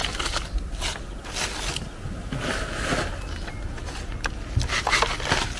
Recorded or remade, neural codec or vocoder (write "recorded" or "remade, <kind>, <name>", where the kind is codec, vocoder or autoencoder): recorded